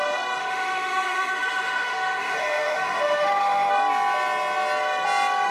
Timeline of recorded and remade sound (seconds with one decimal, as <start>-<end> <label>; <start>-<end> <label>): 0.0-0.4 recorded; 0.4-3.7 remade; 3.7-5.5 recorded

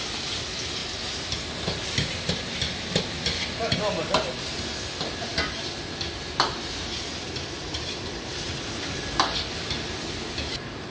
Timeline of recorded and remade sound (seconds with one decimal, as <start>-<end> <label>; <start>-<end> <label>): 0.0-10.9 recorded

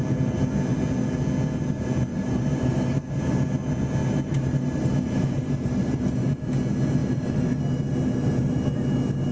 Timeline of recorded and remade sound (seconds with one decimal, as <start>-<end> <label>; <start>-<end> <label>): 0.0-2.1 recorded; 2.1-3.4 remade; 3.4-4.0 recorded; 4.0-6.0 remade; 6.0-9.3 recorded

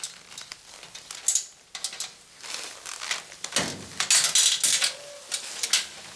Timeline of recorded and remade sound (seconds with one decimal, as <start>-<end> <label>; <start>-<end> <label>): 0.0-6.2 recorded

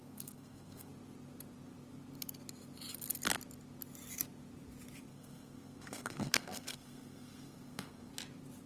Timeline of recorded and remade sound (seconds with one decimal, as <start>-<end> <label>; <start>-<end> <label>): 0.0-0.9 remade; 0.9-5.1 recorded; 5.1-8.1 remade; 8.1-8.7 recorded

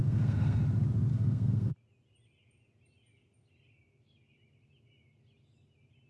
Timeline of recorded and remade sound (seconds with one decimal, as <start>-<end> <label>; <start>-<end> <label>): 0.0-0.6 remade; 0.6-1.1 recorded; 1.1-1.7 remade; 1.7-6.1 recorded

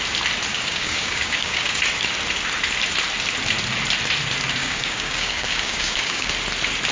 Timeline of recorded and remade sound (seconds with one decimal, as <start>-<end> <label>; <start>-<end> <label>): 0.0-0.5 recorded; 0.5-1.8 remade; 1.8-4.6 recorded; 4.6-6.3 remade; 6.3-6.9 recorded